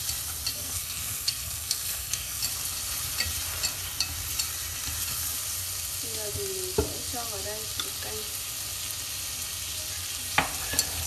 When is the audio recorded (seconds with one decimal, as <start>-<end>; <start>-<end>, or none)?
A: 0.0-0.5; 2.4-11.1